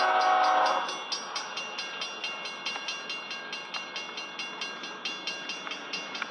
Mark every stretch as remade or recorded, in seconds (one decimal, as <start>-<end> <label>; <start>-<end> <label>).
0.0-6.3 recorded